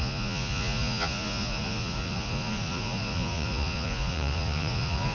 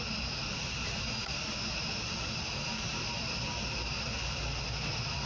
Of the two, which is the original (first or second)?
second